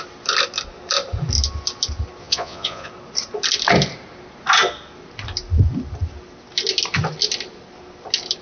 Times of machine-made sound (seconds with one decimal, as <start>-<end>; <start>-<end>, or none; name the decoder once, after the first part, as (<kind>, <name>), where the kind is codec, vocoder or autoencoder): 2.2-2.9 (vocoder, Vocos)